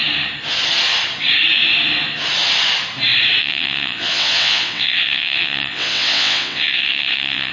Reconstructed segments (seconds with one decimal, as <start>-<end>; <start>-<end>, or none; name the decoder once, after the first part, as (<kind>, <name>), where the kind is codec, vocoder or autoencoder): 3.4-7.5 (vocoder, WaveNeXt)